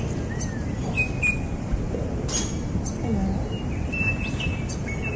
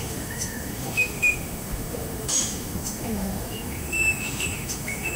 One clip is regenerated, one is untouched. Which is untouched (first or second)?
first